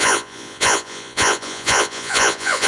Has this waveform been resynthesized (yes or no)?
yes